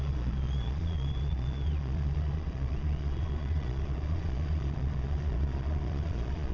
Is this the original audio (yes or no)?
no